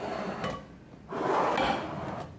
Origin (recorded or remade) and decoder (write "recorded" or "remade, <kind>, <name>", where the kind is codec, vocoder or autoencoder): recorded